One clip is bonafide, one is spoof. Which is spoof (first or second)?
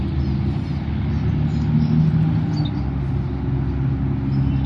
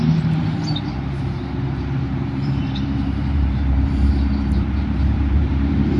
second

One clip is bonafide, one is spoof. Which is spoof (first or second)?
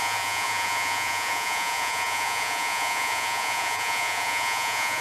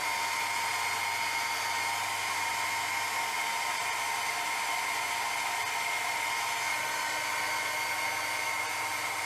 first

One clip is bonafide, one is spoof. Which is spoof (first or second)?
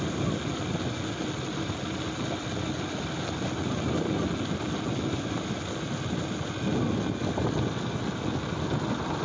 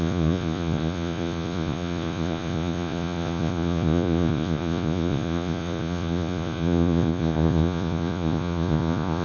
second